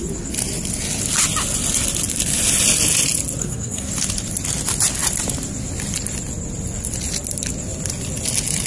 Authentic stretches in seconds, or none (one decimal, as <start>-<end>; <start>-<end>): 0.0-3.4; 3.9-8.7